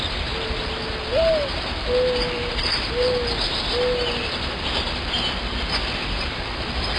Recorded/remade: recorded